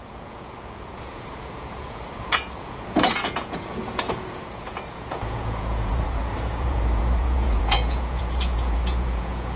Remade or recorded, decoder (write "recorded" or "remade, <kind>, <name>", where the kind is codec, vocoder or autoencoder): remade, vocoder, Vocos